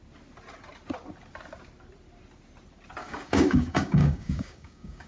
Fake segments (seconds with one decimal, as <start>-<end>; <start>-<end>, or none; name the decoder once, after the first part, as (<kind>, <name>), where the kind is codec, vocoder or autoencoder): 3.0-5.1 (codec, DAC)